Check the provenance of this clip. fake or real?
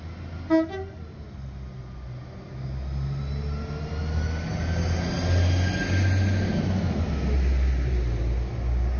real